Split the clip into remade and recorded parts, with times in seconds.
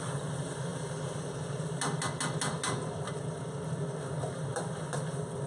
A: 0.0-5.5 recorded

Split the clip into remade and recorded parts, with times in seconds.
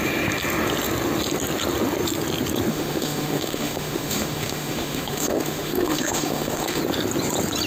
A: 0.0-2.7 recorded; 2.7-6.8 remade; 6.8-7.7 recorded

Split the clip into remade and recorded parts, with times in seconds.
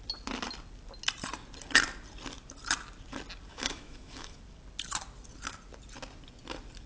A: 0.0-3.5 recorded; 3.5-4.4 remade; 4.4-6.9 recorded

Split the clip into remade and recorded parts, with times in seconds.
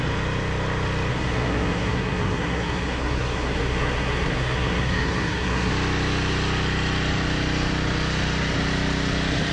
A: 0.0-1.1 recorded; 1.1-5.7 remade; 5.7-9.5 recorded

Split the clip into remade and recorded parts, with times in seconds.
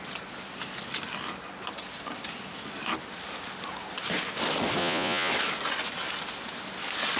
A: 0.0-4.8 recorded; 4.8-5.3 remade; 5.3-7.2 recorded